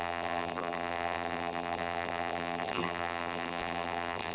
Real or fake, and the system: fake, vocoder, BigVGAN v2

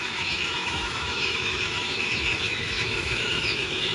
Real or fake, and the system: fake, autoencoder, DAC-VAE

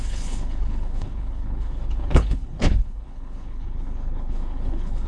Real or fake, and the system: fake, codec, HILCodec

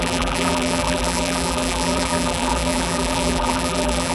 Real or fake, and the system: fake, vocoder, BigVGAN v2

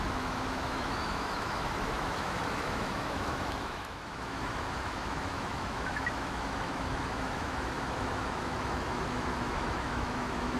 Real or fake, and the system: fake, autoencoder, DAC-VAE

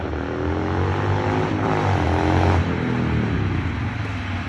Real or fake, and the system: real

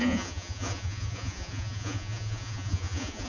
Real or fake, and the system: fake, vocoder, Vocos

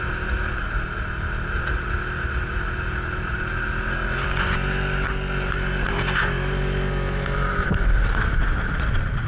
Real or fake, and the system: real